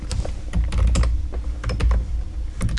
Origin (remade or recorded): recorded